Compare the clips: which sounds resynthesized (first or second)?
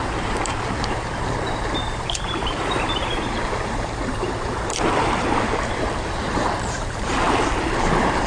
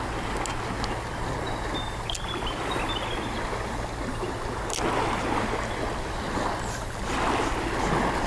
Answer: first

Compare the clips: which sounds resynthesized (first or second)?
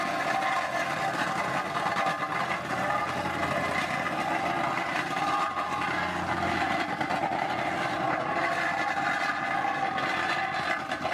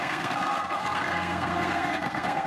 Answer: second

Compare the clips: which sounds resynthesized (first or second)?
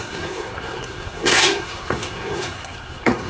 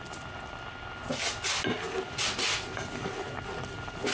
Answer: first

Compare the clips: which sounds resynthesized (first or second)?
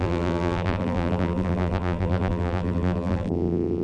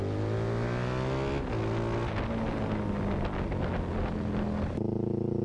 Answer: first